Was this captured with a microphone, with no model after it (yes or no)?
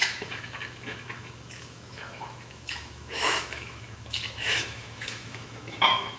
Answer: no